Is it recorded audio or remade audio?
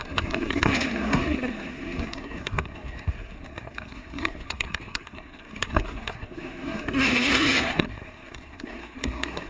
remade